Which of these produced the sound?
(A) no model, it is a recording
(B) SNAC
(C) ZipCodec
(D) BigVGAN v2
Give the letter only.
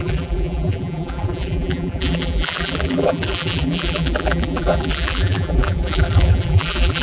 D